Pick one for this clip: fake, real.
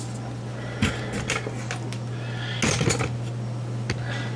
real